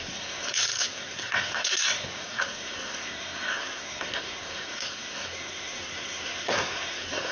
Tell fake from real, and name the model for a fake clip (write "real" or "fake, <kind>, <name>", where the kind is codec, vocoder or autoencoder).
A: fake, codec, SNAC